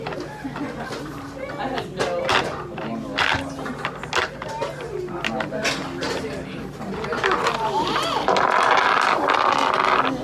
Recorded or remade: recorded